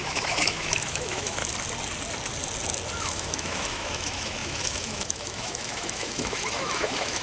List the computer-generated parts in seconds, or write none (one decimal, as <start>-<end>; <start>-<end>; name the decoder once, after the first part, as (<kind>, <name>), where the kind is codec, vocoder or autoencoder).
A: 0.0-1.4 (autoencoder, DAC-VAE); 3.0-7.2